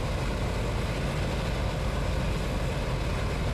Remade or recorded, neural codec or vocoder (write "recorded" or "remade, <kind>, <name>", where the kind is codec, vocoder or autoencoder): recorded